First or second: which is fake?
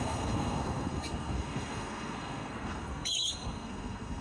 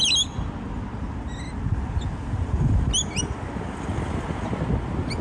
first